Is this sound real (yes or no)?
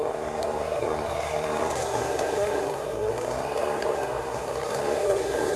no